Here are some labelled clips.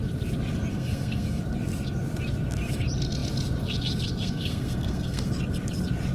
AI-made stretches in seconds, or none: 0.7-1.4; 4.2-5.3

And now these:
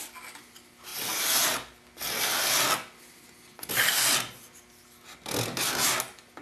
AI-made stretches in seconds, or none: none